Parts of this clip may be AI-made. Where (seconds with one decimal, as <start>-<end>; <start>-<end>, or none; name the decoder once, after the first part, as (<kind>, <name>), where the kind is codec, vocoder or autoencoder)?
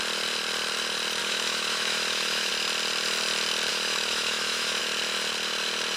1.2-2.5 (autoencoder, DAC-VAE); 3.7-4.8